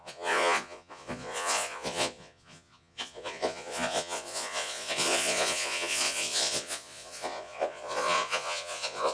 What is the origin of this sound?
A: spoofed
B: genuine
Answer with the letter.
A